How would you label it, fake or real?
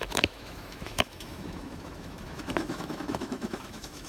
fake